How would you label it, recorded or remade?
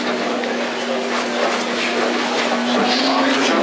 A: recorded